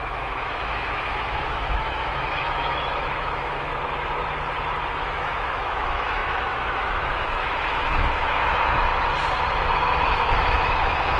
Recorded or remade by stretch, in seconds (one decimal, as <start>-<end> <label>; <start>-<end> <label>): 0.0-3.7 remade; 3.7-4.9 recorded; 4.9-8.9 remade; 8.9-10.2 recorded; 10.2-11.2 remade